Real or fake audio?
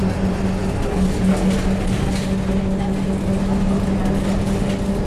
real